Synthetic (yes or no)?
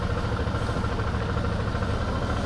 no